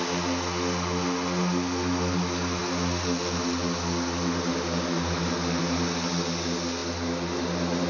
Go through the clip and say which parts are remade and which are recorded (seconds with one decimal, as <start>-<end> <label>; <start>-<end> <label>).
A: 0.0-7.9 recorded